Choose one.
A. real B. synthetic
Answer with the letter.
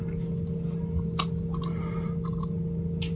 A